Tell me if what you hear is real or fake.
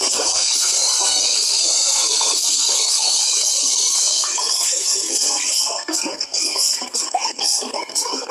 fake